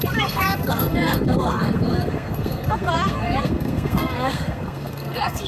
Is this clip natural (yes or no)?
no